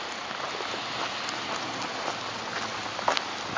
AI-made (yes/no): no